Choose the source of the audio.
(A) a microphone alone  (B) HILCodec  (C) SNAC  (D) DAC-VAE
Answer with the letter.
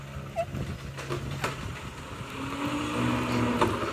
A